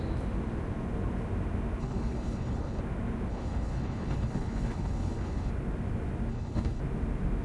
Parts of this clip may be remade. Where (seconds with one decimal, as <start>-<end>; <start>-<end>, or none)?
1.8-2.8; 3.3-5.5; 6.3-6.8

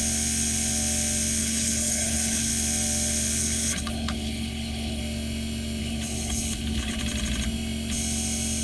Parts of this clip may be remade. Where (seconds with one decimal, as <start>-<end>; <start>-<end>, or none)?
1.4-2.5; 3.4-5.0; 5.8-7.0

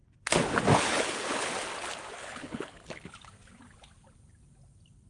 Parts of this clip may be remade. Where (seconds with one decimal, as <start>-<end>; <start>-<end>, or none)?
0.7-1.5; 2.2-3.1

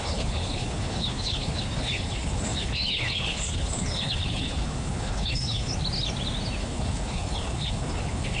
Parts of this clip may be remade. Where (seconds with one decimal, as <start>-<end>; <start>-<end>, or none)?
0.0-5.7; 6.6-8.4